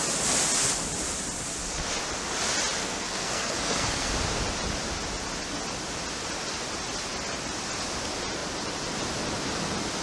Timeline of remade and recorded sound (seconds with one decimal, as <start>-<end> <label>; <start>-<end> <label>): 0.0-2.8 recorded; 2.8-4.1 remade; 4.1-10.0 recorded